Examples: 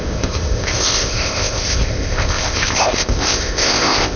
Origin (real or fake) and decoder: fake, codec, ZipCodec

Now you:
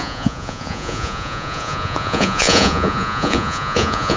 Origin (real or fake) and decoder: fake, vocoder, Vocos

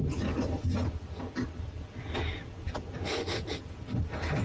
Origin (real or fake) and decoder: real